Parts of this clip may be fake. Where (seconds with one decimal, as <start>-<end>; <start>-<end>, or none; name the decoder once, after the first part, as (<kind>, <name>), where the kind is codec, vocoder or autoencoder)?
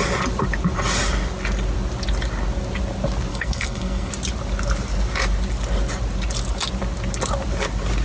3.3-4.1 (codec, SNAC)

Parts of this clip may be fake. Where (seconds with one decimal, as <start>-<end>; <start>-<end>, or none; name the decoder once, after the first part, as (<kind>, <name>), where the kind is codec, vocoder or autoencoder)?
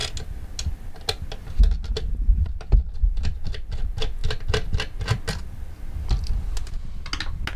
none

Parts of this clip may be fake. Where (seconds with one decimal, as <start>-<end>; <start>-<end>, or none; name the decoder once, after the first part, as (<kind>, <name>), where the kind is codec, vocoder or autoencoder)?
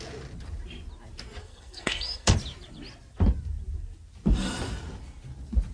1.4-2.3 (codec, SNAC)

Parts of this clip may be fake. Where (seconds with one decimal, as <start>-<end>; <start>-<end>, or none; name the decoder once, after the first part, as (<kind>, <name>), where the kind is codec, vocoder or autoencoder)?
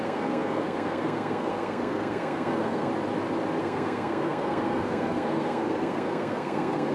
0.0-2.9 (codec, SNAC); 3.6-6.9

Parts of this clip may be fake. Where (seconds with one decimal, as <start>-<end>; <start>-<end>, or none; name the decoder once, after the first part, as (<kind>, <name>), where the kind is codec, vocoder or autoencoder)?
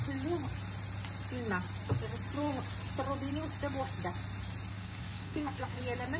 4.7-5.8 (codec, SNAC)